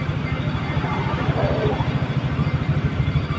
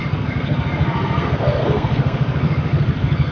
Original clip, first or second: first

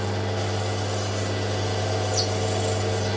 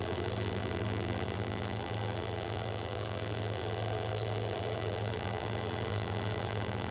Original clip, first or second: first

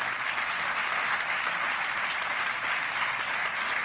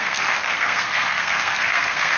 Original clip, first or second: first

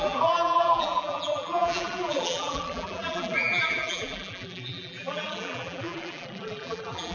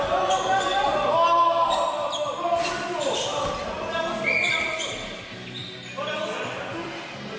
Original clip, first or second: second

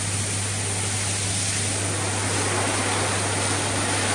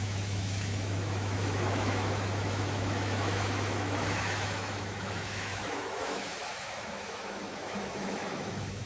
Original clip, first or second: first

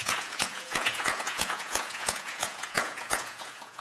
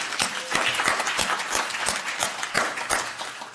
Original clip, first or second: second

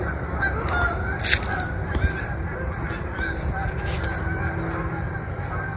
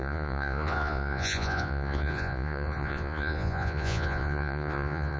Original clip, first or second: first